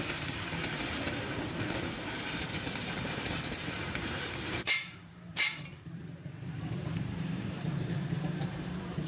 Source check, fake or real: fake